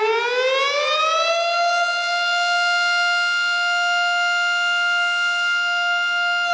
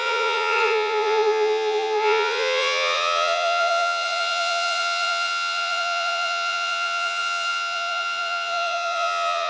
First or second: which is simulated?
second